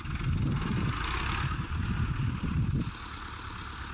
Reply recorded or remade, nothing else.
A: recorded